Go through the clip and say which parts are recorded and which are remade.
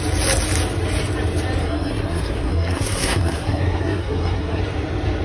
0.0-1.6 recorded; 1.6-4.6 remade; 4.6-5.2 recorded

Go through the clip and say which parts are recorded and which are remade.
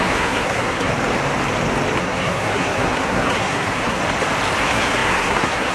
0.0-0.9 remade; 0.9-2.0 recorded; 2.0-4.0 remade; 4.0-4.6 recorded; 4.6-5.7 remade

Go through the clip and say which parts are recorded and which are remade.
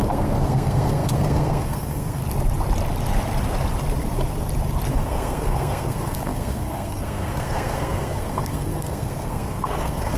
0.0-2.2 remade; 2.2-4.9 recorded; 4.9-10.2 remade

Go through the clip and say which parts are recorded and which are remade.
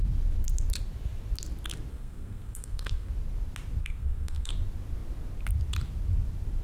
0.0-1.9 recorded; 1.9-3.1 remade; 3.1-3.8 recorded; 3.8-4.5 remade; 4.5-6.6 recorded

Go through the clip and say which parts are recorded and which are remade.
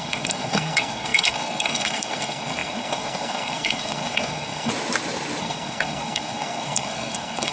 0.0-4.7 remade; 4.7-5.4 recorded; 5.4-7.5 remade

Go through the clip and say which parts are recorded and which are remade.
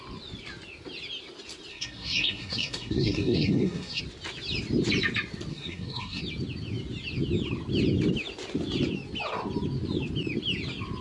0.0-1.7 recorded; 1.7-4.0 remade; 4.0-5.5 recorded; 5.5-6.2 remade; 6.2-11.0 recorded